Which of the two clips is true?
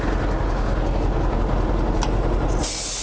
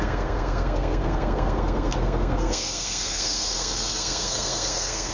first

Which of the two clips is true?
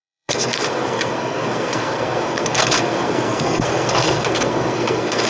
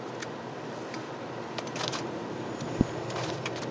second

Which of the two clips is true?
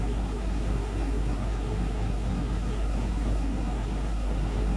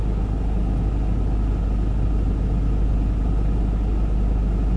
second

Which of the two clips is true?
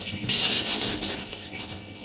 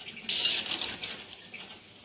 second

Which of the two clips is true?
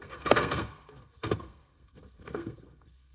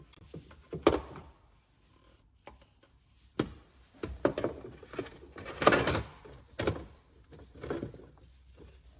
second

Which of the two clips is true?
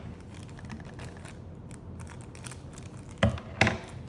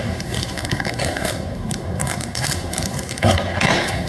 first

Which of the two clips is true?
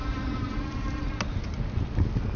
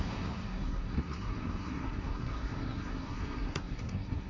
first